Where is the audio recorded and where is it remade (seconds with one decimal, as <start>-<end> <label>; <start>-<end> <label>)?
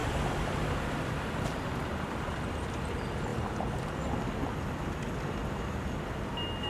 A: 0.0-2.4 remade; 2.4-6.7 recorded